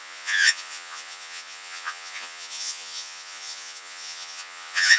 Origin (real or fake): fake